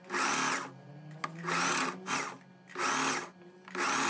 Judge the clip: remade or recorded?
recorded